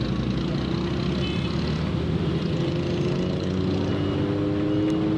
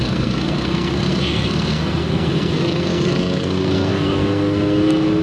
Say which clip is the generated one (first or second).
second